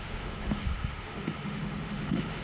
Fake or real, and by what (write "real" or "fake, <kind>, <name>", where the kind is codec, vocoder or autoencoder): fake, autoencoder, DAC-VAE